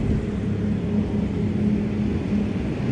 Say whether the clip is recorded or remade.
recorded